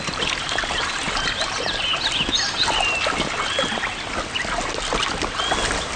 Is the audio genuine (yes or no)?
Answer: yes